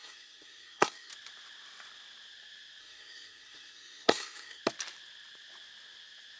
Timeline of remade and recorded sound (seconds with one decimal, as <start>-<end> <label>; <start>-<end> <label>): 0.0-1.1 remade; 1.1-2.8 recorded; 2.8-4.6 remade; 4.6-6.4 recorded